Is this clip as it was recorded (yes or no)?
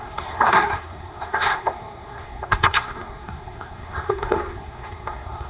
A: no